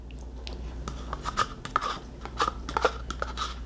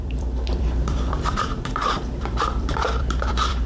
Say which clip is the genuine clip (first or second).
first